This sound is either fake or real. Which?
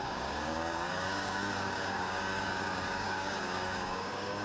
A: fake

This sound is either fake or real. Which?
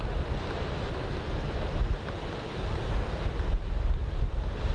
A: real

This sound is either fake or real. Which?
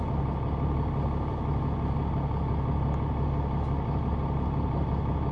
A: real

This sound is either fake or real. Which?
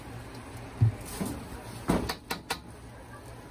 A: real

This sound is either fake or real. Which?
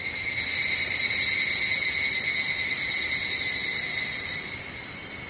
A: real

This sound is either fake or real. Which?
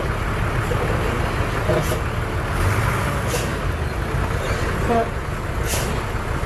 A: real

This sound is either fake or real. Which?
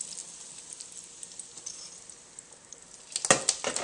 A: real